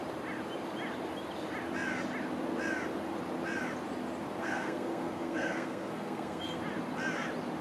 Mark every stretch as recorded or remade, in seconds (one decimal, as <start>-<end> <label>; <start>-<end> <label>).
0.0-4.4 recorded; 4.4-6.6 remade; 6.6-7.6 recorded